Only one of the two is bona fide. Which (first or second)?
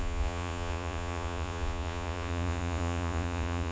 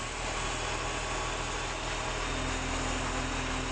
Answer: second